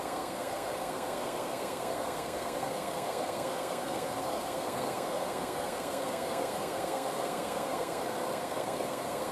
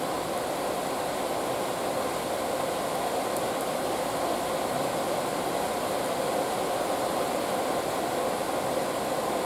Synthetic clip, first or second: first